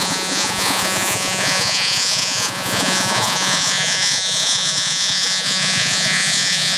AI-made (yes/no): yes